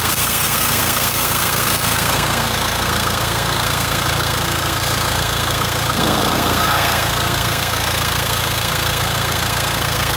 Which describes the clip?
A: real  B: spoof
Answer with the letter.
B